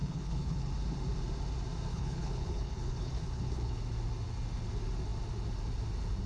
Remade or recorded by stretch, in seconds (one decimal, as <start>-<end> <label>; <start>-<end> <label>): 0.0-0.7 remade; 0.7-1.9 recorded; 1.9-3.8 remade; 3.8-6.3 recorded